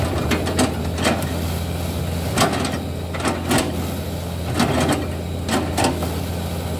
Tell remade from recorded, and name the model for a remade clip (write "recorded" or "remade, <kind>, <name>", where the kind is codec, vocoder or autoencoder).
recorded